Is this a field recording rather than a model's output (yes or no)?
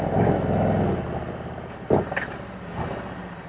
yes